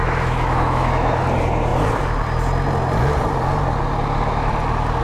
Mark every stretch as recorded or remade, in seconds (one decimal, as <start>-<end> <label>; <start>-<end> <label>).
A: 0.0-1.2 remade; 1.2-5.0 recorded